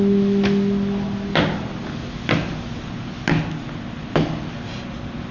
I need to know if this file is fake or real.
real